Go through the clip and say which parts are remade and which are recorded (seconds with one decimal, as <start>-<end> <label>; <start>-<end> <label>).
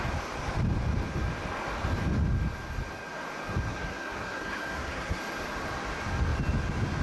0.0-3.7 recorded; 3.7-5.2 remade; 5.2-7.0 recorded